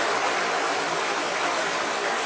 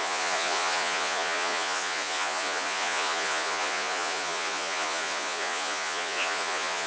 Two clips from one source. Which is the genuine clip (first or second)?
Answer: first